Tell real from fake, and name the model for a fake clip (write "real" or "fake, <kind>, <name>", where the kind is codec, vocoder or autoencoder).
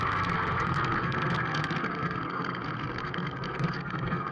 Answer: fake, codec, SNAC